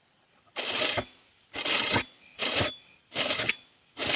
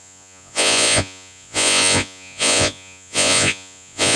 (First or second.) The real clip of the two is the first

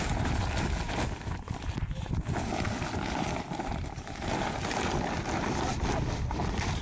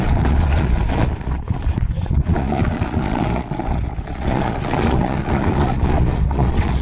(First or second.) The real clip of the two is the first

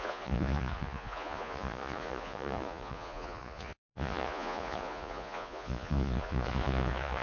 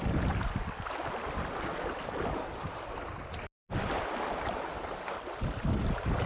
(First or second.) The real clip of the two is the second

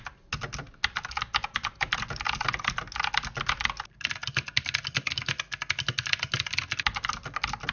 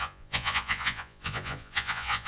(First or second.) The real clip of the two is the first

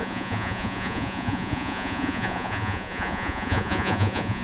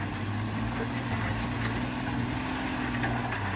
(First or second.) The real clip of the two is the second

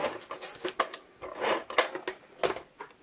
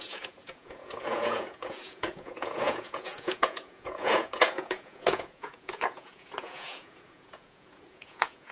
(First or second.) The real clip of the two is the first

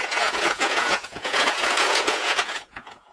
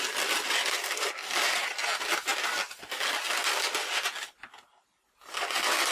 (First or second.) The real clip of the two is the second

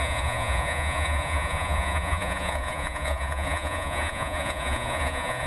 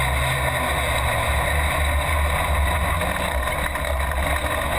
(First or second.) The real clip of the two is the second